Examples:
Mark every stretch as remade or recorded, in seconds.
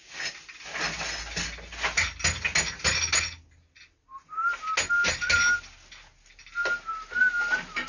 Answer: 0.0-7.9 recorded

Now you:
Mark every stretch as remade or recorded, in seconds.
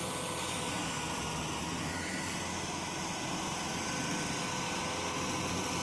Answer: 0.0-5.8 recorded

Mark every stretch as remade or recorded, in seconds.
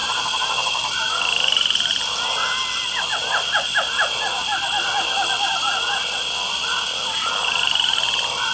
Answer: 0.0-8.5 recorded